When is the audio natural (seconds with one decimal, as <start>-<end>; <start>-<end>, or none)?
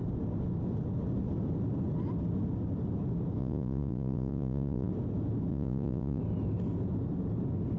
0.0-3.4; 4.9-5.5; 6.2-7.8